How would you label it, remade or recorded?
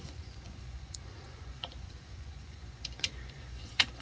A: remade